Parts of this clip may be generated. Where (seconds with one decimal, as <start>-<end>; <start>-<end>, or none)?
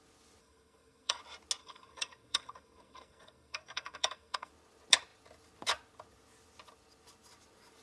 0.4-1.2; 1.6-4.5